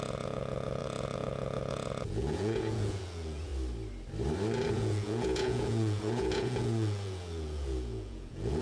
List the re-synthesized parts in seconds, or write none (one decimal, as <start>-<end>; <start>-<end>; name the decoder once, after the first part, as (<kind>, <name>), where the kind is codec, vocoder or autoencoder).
0.0-3.5 (vocoder, Vocos); 4.7-8.6